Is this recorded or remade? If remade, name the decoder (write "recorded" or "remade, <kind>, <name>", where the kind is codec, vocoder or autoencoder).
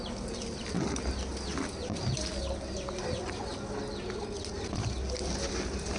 recorded